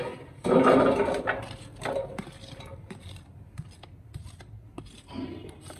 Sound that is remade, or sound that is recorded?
recorded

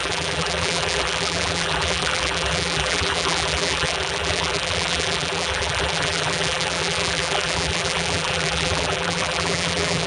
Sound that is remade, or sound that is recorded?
remade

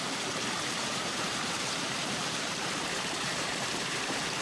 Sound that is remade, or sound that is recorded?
remade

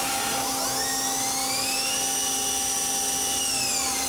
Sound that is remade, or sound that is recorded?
recorded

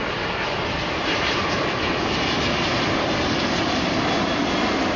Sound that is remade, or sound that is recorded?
recorded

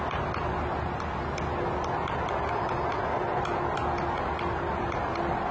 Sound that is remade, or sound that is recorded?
recorded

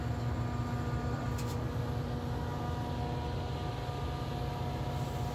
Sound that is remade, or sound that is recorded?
recorded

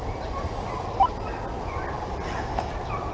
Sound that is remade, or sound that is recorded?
recorded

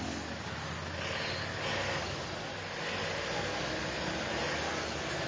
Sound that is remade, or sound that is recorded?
recorded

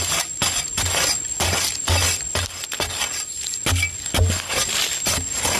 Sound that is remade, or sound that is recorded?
recorded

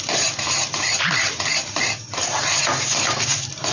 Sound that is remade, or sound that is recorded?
remade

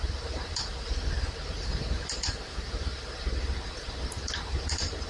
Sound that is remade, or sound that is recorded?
remade